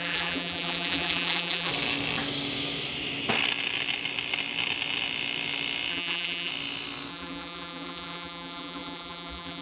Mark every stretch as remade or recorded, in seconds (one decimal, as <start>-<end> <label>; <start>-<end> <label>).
0.0-1.7 remade; 1.7-5.9 recorded; 5.9-6.5 remade; 6.5-7.1 recorded; 7.1-9.6 remade